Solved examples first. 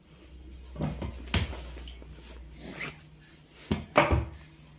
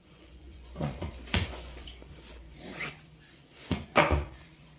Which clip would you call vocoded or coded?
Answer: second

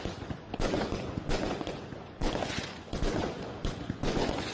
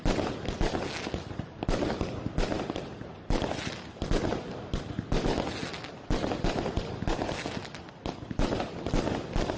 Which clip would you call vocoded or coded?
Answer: first